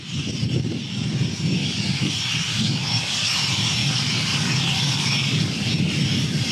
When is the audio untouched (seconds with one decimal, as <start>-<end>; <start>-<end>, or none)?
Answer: 0.0-1.6; 2.1-2.5; 3.3-3.8; 5.7-6.5